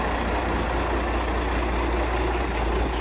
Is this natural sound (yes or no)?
yes